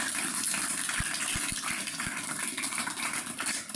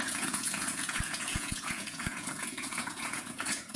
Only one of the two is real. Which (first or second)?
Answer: first